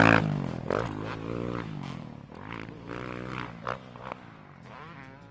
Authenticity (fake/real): real